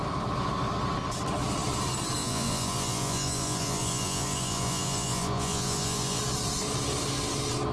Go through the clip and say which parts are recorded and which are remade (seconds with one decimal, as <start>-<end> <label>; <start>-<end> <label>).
0.0-2.2 recorded; 2.2-6.2 remade; 6.2-7.7 recorded